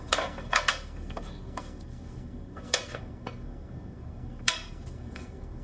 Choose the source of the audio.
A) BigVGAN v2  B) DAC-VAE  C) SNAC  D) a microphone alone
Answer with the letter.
C